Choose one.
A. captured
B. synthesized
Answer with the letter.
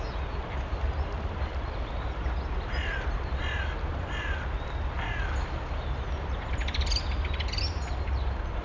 A